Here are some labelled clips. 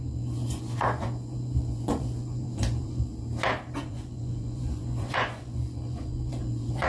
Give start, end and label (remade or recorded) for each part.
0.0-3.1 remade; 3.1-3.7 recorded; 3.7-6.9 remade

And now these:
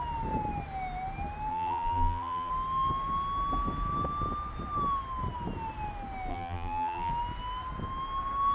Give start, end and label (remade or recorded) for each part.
0.0-1.5 recorded; 1.5-2.5 remade; 2.5-6.3 recorded; 6.3-7.1 remade; 7.1-8.5 recorded

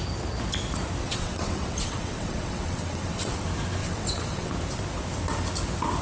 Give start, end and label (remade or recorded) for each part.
0.0-1.0 recorded; 1.0-3.4 remade; 3.4-3.8 recorded; 3.8-4.5 remade; 4.5-6.0 recorded

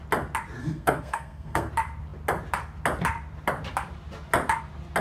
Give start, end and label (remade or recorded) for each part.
0.0-0.6 recorded; 0.6-1.7 remade; 1.7-5.0 recorded

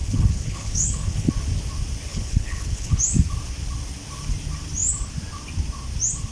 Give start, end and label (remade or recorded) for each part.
0.0-1.3 remade; 1.3-2.1 recorded; 2.1-3.0 remade; 3.0-6.3 recorded